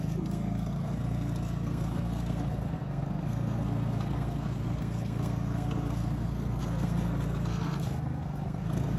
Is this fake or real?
fake